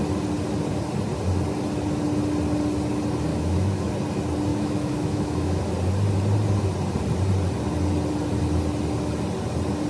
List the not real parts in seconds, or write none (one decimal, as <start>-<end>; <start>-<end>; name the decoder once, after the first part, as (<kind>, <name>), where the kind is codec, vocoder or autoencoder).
3.3-3.9 (autoencoder, DAC-VAE); 4.5-5.6